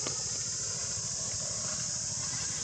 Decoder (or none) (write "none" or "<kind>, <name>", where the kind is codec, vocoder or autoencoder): none